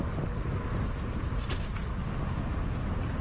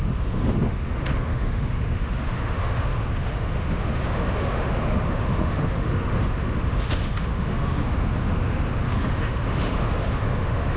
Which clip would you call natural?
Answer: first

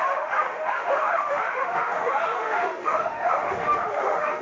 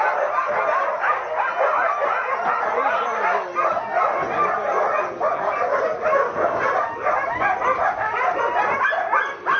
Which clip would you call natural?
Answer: second